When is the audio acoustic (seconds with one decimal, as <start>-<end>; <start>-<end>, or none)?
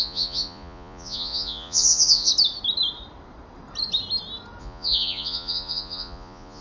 2.3-4.6